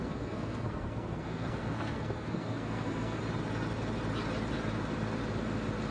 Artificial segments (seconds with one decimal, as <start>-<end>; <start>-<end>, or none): 0.0-3.2